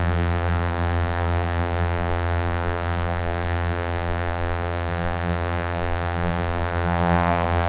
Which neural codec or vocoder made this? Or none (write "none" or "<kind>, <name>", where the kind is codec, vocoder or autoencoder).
vocoder, BigVGAN v2